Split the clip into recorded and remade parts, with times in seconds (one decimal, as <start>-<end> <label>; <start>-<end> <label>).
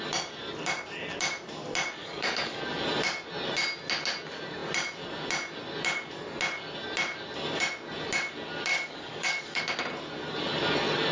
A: 0.0-2.0 recorded; 2.0-2.6 remade; 2.6-8.7 recorded; 8.7-9.6 remade; 9.6-11.1 recorded